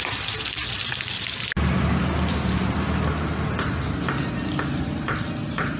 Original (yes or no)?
yes